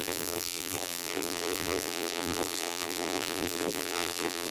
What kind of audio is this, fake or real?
fake